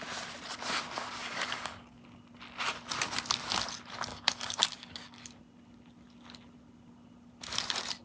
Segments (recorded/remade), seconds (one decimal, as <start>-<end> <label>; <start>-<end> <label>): 0.0-1.2 recorded; 1.2-2.0 remade; 2.0-4.1 recorded; 4.1-5.4 remade; 5.4-8.0 recorded